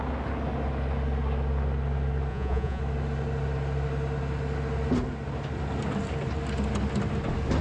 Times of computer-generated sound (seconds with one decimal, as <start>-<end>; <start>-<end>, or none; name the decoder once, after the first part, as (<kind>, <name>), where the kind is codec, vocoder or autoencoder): 2.3-2.8 (vocoder, Vocos)